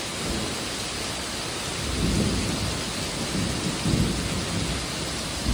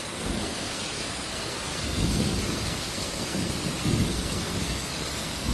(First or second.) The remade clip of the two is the second